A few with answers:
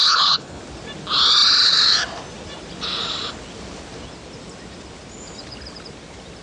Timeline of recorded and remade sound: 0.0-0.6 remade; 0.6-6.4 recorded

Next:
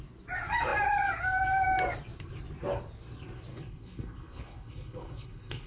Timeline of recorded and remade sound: 0.0-3.5 recorded; 3.5-5.7 remade

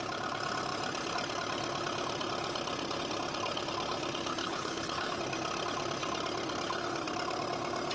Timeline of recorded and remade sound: 0.0-4.4 recorded; 4.4-5.2 remade; 5.2-7.9 recorded